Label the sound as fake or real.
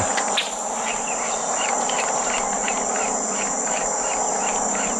real